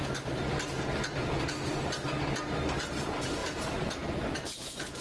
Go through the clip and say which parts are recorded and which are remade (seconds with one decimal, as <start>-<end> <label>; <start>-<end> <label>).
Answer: 0.0-3.4 recorded; 3.4-5.0 remade